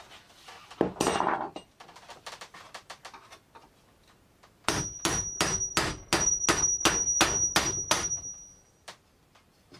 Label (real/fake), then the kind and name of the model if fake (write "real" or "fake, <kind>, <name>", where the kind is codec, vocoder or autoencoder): real